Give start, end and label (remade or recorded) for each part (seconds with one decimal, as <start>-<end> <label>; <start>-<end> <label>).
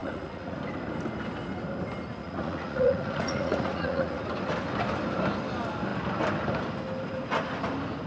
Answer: 0.0-0.6 remade; 0.6-2.2 recorded; 2.2-4.2 remade; 4.2-8.1 recorded